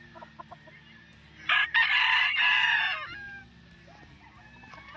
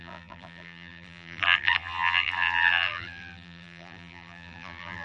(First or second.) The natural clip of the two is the first